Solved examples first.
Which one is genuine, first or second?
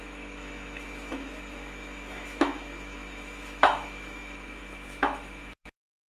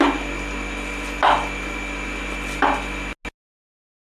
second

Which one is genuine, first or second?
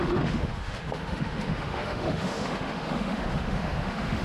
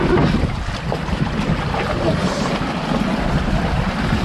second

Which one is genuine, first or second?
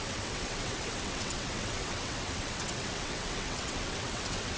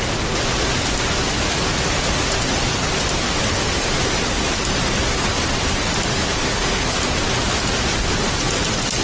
second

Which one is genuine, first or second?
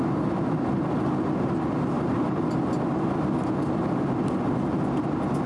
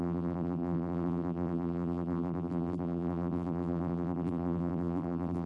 first